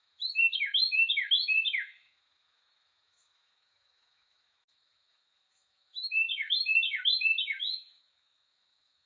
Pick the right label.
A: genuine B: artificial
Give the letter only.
B